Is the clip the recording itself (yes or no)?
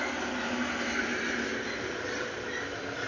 yes